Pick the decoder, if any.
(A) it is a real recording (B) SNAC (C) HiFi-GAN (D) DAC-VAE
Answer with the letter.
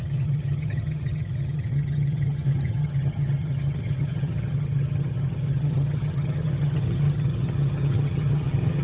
C